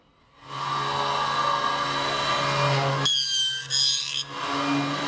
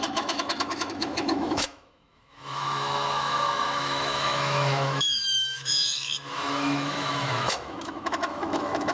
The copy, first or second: second